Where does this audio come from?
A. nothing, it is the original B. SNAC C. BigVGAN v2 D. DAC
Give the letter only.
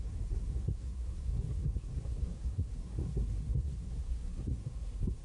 B